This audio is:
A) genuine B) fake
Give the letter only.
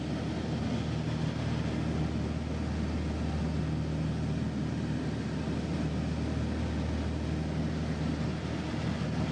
A